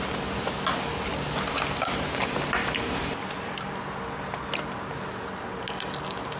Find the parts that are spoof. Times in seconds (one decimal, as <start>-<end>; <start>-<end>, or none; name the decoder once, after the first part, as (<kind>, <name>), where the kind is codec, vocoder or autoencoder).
none